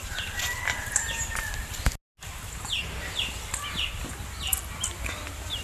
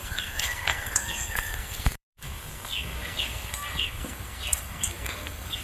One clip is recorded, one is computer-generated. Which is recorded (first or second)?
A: first